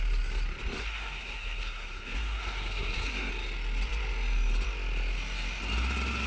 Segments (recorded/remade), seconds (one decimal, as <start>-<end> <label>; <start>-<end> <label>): 0.0-0.8 recorded; 0.8-3.3 remade; 3.3-6.3 recorded